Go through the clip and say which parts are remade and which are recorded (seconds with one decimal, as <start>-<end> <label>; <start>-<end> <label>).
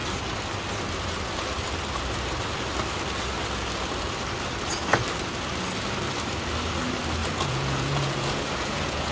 0.0-7.2 recorded; 7.2-9.1 remade